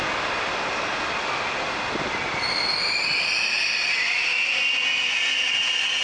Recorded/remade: recorded